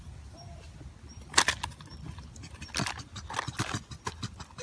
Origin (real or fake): real